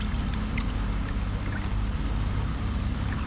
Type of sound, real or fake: fake